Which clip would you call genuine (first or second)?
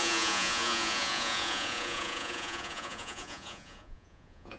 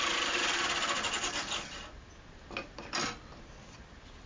second